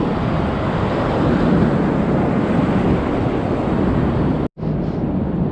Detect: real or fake real